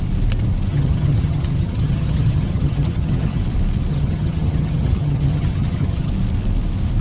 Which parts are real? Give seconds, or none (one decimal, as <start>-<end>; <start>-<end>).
0.0-0.7; 3.4-3.9; 6.1-7.0